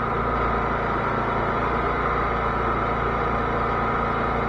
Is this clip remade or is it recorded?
recorded